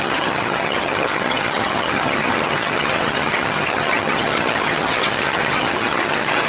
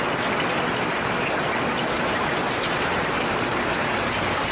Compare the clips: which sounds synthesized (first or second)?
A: first